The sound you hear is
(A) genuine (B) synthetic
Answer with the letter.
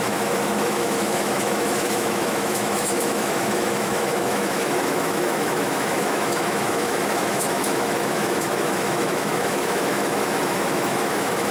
B